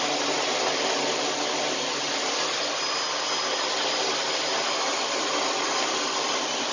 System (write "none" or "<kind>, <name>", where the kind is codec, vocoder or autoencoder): none